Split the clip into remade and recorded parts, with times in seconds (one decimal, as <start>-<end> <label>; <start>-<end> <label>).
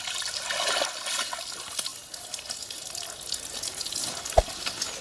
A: 0.0-5.0 recorded